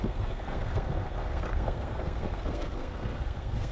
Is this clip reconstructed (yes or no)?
yes